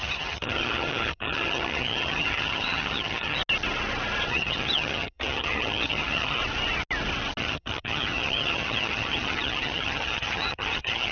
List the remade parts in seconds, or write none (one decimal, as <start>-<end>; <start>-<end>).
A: 0.0-3.4; 4.3-6.4; 7.4-11.1